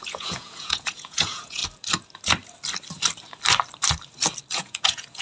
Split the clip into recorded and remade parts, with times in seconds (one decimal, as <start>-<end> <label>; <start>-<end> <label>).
0.0-1.6 remade; 1.6-4.5 recorded; 4.5-5.2 remade